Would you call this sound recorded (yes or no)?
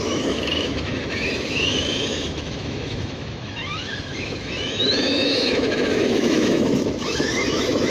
no